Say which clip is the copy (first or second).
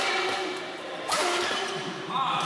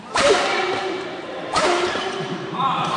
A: second